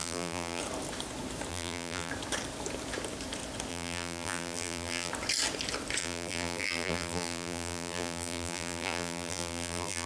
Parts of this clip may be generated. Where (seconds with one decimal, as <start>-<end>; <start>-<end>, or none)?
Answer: 0.0-0.6; 1.5-2.1; 3.7-5.1; 6.0-10.1